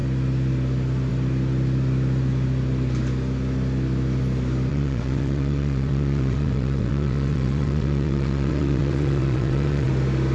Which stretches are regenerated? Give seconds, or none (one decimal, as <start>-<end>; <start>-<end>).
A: 4.7-9.9